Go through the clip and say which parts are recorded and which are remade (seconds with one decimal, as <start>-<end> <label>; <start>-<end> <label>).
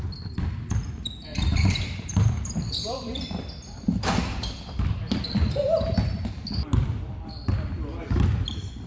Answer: 0.0-1.3 recorded; 1.3-4.5 remade; 4.5-8.9 recorded